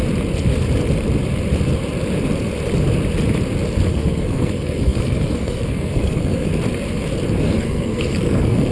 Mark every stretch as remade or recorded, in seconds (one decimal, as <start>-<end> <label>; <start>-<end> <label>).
0.0-3.9 recorded; 3.9-6.5 remade; 6.5-7.4 recorded; 7.4-8.7 remade